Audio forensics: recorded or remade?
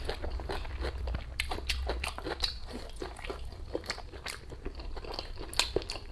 recorded